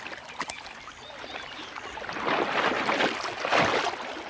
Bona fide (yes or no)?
yes